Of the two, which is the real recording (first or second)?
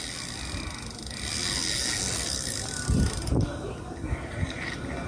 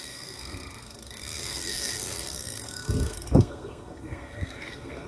first